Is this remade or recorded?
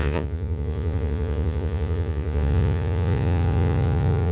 remade